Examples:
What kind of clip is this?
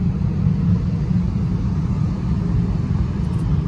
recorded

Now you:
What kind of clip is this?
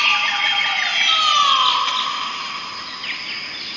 recorded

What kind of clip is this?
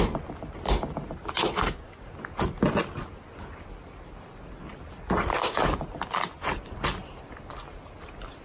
recorded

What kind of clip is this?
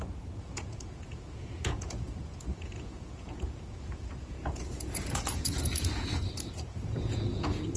remade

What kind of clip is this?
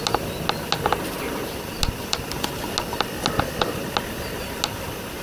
recorded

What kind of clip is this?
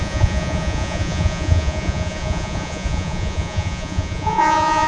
remade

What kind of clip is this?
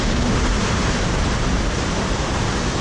recorded